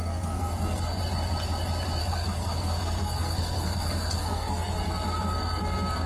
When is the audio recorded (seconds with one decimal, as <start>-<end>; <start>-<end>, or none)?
1.0-2.0